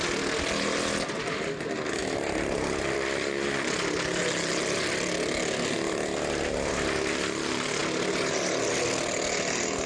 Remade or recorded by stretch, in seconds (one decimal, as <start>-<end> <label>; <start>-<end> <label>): 0.0-9.9 recorded